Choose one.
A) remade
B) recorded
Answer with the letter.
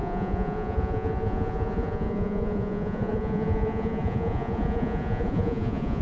A